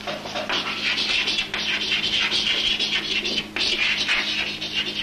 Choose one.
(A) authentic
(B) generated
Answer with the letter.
A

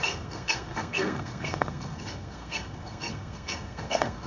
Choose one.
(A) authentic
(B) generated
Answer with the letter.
B